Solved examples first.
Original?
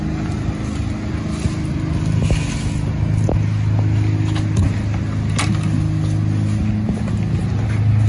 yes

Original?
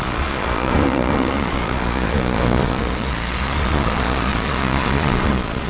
no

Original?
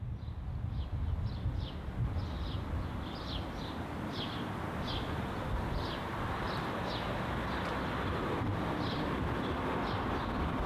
yes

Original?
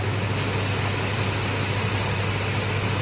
yes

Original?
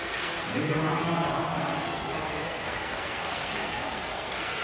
no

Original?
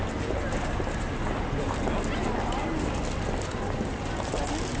yes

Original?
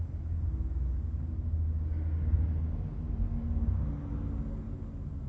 yes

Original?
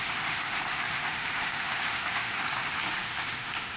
no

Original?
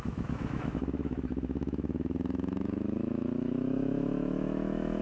no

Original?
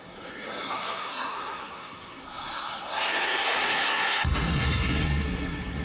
no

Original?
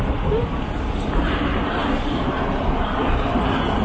yes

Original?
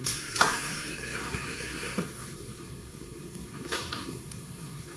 no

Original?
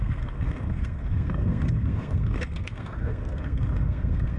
no